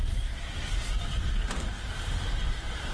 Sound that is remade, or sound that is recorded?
remade